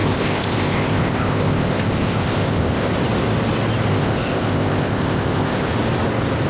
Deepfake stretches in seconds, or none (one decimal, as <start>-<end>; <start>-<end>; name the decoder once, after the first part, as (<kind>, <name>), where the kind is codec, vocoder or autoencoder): 0.0-2.9 (codec, ZipCodec); 3.9-5.7